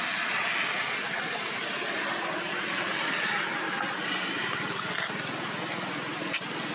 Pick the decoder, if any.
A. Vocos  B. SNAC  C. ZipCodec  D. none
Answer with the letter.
D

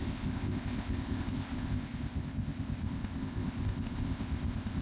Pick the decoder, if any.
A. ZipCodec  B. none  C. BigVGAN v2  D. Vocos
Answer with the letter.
A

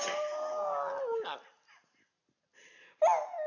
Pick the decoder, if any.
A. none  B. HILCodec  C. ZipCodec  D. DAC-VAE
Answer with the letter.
A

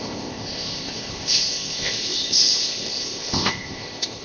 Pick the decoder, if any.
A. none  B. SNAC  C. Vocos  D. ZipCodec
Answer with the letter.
D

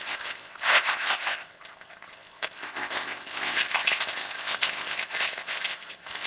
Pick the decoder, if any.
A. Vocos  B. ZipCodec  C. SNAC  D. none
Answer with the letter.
B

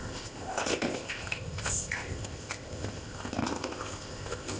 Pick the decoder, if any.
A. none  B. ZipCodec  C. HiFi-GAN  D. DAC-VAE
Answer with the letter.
B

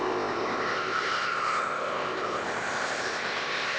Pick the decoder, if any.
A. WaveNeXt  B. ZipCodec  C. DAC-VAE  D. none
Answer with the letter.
B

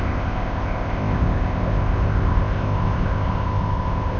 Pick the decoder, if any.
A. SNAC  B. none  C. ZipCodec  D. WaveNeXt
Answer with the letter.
C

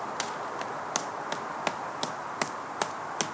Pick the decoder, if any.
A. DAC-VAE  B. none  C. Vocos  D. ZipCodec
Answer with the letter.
B